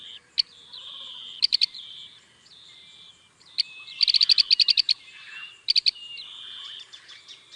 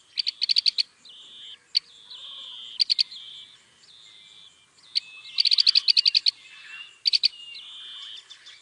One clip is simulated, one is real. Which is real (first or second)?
second